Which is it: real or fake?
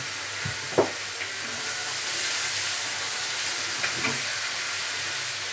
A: real